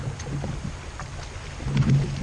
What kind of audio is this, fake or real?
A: real